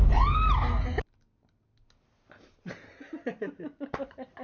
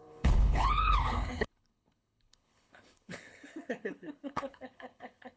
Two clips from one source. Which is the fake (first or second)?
second